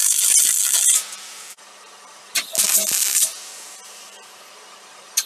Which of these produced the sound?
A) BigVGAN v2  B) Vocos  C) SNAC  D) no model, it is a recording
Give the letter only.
A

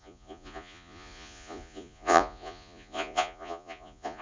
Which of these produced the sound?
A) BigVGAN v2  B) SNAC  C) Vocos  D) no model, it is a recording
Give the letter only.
C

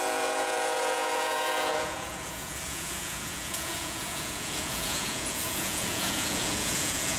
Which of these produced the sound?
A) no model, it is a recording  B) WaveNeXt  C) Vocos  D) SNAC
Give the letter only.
C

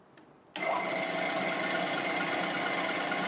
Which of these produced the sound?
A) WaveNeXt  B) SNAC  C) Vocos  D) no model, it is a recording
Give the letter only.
D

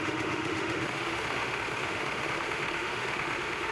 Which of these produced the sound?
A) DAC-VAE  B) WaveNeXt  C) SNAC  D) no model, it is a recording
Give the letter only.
A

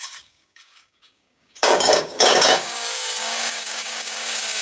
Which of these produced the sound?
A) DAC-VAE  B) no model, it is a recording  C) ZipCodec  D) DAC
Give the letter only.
D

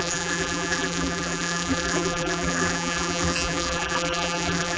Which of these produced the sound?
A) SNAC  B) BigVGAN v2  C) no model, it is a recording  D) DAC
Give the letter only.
B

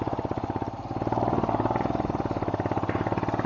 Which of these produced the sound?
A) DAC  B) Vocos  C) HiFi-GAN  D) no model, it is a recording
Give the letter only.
D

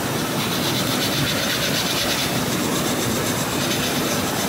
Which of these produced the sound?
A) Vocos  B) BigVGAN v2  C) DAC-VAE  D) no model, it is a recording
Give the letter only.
D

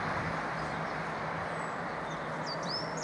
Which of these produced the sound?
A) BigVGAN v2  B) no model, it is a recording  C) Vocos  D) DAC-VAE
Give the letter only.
A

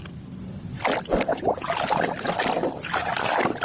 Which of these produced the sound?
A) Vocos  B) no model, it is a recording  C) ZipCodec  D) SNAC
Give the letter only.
B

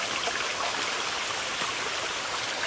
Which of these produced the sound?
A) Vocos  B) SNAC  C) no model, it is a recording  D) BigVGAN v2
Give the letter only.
C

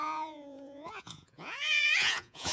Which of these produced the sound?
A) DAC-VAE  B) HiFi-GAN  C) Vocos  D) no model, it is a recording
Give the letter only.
C